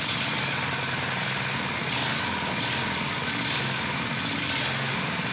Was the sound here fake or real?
real